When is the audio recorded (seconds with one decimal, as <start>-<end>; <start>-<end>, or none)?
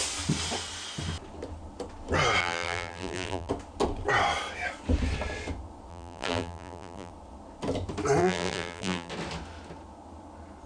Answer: 0.0-2.4; 3.5-5.9; 7.1-8.2; 9.1-10.7